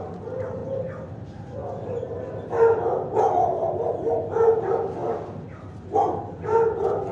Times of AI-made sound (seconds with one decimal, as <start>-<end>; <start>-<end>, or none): none